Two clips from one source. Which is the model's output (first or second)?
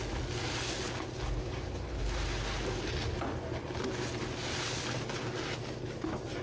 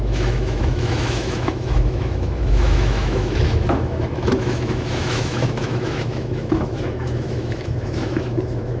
second